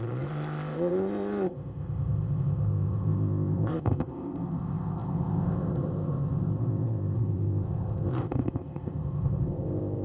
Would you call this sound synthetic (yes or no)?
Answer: yes